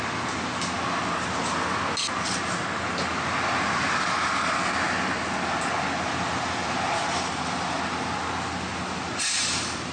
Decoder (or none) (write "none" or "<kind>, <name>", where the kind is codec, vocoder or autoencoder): none